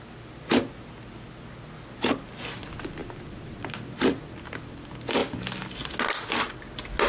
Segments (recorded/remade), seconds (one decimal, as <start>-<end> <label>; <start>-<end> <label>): 0.0-7.1 recorded